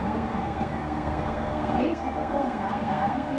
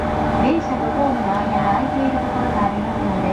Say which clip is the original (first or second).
second